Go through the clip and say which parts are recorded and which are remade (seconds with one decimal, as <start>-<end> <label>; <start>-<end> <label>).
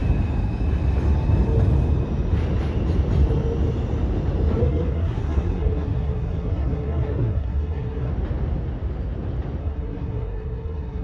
0.0-4.6 recorded; 4.6-8.1 remade; 8.1-9.6 recorded; 9.6-11.0 remade